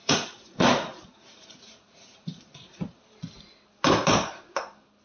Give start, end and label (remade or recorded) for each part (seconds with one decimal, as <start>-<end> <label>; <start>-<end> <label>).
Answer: 0.0-3.0 remade; 3.0-5.0 recorded